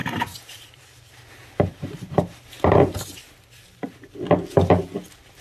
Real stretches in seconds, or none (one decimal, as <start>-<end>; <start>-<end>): 3.2-5.4